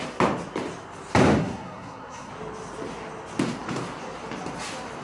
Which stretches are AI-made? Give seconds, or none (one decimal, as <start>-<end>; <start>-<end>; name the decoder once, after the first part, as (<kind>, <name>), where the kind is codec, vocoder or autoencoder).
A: 1.4-2.3 (codec, SNAC)